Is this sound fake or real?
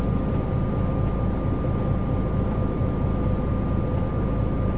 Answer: real